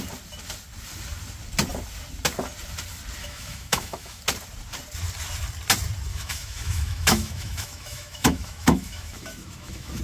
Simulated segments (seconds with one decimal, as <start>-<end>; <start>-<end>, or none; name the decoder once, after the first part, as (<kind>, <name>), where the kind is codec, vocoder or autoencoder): 3.2-4.2 (autoencoder, DAC-VAE); 6.1-10.0